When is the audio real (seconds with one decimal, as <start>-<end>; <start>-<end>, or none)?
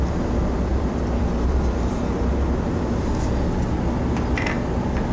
0.0-5.1